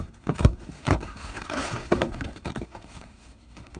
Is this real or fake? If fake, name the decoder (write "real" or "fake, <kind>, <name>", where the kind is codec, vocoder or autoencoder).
fake, codec, SNAC